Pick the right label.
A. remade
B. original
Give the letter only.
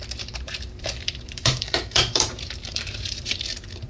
A